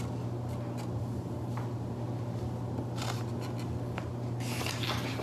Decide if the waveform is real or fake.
real